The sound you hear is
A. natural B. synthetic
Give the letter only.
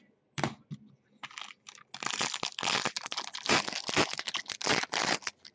A